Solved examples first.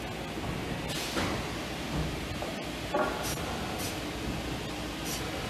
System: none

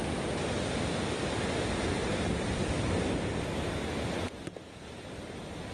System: none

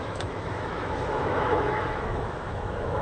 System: autoencoder, DAC-VAE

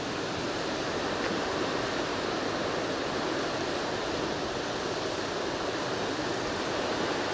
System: none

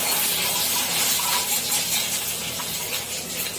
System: none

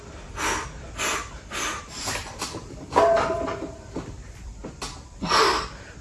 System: vocoder, BigVGAN v2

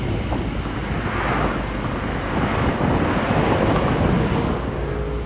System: none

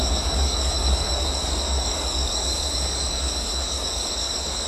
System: codec, DAC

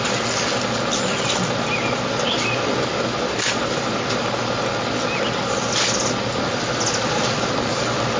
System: none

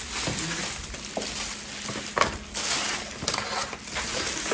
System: none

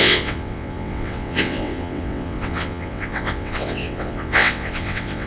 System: vocoder, WaveNeXt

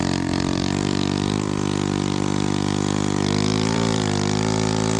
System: vocoder, BigVGAN v2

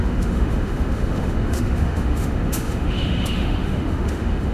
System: autoencoder, DAC-VAE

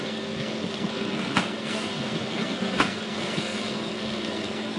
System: codec, SNAC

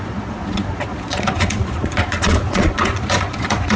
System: vocoder, Vocos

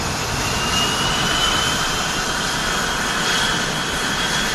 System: none